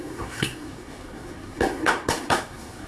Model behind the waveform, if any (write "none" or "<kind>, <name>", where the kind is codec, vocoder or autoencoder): codec, SNAC